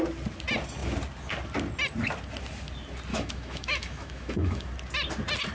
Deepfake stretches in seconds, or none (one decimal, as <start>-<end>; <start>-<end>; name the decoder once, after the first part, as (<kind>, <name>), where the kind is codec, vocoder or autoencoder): 3.1-4.7 (autoencoder, DAC-VAE)